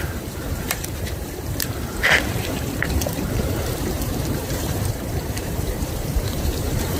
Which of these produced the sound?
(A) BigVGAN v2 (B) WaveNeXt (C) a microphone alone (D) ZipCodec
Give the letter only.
A